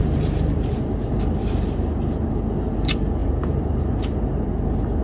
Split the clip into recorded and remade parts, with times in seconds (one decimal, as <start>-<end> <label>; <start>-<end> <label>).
0.0-5.0 recorded